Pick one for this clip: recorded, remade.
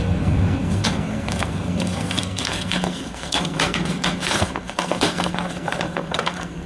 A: remade